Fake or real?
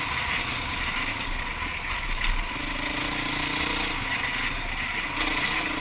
real